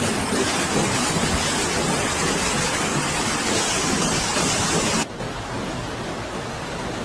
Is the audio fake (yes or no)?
no